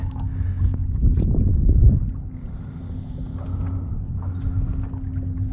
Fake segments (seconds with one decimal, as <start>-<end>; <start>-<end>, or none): none

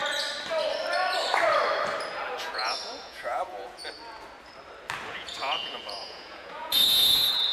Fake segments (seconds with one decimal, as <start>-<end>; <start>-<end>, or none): 2.4-3.8; 5.1-7.5

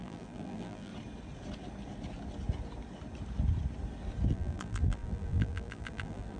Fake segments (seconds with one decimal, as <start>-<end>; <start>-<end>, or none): 0.0-0.9; 4.3-6.4

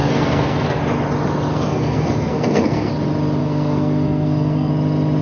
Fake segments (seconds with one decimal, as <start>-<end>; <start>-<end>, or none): 0.0-0.8; 1.5-2.9; 3.4-4.7